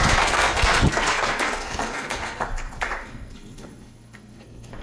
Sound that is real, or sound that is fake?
fake